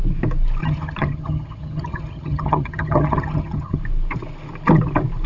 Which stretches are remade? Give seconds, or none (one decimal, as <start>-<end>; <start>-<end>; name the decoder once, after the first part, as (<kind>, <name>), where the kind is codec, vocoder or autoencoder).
0.6-3.8 (vocoder, HiFi-GAN)